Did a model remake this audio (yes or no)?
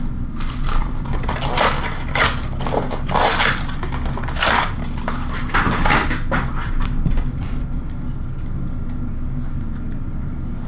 no